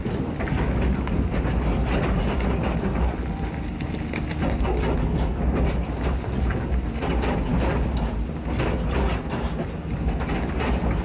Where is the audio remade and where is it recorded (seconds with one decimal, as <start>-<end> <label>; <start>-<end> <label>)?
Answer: 0.0-11.0 recorded